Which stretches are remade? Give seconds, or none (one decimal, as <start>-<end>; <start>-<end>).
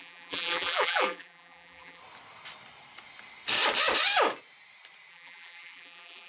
0.0-2.0; 5.1-6.3